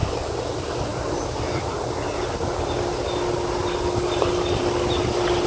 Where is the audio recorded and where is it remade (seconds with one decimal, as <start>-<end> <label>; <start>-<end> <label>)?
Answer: 0.0-5.5 recorded